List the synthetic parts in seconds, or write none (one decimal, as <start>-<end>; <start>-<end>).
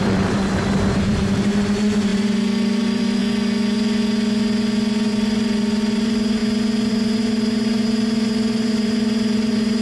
0.0-3.2; 5.1-6.4; 6.9-9.8